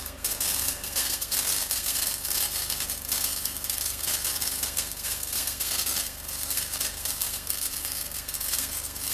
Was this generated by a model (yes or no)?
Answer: yes